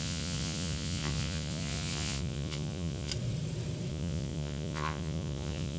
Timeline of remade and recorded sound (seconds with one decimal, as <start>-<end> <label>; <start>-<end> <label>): 0.0-3.1 remade; 3.1-3.9 recorded; 3.9-5.8 remade